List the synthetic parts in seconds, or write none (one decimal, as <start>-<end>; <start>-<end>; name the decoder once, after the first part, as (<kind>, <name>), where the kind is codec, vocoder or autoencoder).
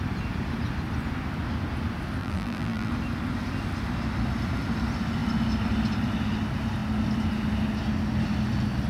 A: 2.2-2.9 (vocoder, BigVGAN v2)